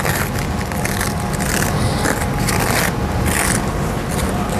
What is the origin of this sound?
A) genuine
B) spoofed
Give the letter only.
A